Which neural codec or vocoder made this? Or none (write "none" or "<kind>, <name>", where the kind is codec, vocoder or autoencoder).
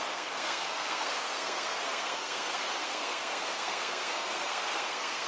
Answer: codec, SNAC